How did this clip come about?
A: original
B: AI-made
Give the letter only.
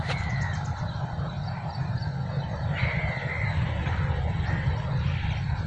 A